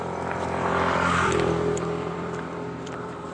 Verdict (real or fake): fake